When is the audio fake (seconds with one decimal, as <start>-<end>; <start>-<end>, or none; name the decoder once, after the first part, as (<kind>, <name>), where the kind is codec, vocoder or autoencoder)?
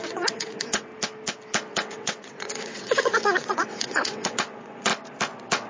0.0-0.9 (vocoder, WaveNeXt); 1.7-4.9